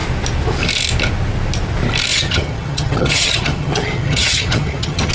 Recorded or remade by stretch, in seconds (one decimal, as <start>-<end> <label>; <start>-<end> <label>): 0.0-2.1 recorded; 2.1-5.1 remade